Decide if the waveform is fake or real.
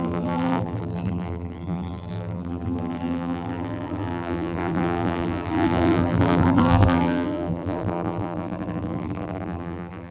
fake